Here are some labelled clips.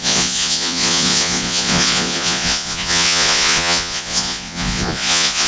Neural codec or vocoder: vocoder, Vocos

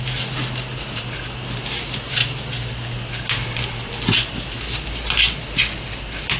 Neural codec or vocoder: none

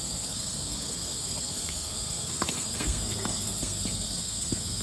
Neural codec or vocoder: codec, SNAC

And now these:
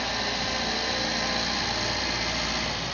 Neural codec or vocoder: none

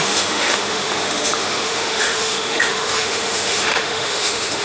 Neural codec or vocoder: autoencoder, DAC-VAE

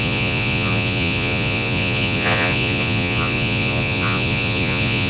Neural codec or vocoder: vocoder, Vocos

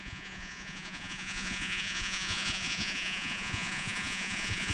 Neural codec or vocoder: vocoder, Vocos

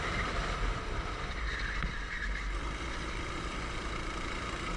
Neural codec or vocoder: vocoder, BigVGAN v2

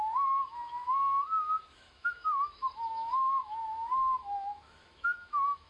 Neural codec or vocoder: autoencoder, DAC-VAE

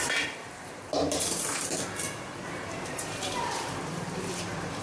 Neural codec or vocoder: vocoder, BigVGAN v2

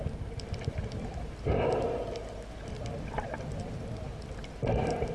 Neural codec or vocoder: none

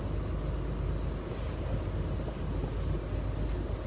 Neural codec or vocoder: none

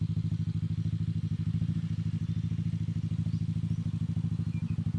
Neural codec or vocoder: none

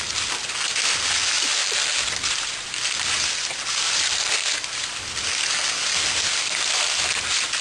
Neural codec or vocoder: none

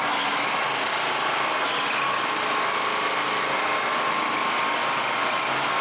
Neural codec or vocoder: none